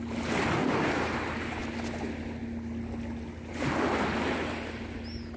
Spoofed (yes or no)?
no